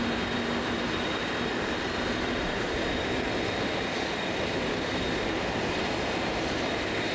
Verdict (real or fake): real